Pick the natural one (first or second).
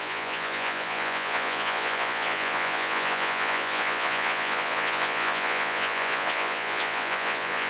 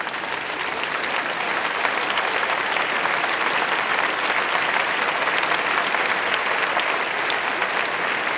second